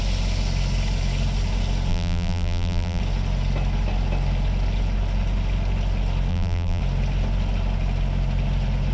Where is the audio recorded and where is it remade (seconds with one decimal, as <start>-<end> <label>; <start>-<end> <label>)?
0.0-1.9 recorded; 1.9-3.0 remade; 3.0-6.3 recorded; 6.3-6.8 remade; 6.8-8.9 recorded